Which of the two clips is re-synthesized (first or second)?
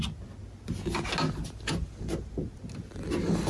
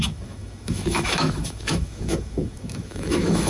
second